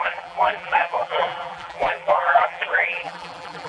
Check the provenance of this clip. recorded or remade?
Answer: remade